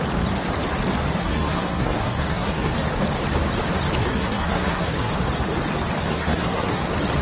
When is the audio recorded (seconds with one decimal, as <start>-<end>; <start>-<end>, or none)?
0.0-1.2; 2.7-4.1; 5.1-6.1; 6.8-7.2